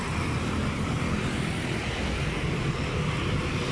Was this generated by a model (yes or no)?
no